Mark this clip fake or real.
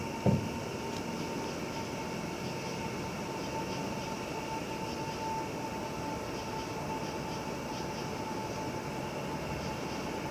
real